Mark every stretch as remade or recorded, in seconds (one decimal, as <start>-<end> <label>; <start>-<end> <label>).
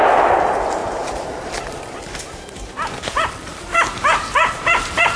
0.0-0.8 recorded; 0.8-2.0 remade; 2.0-3.5 recorded; 3.5-5.2 remade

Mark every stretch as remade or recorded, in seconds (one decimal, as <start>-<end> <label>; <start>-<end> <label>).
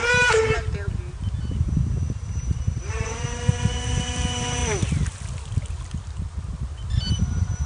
0.0-1.4 recorded; 1.4-4.6 remade; 4.6-7.2 recorded; 7.2-7.7 remade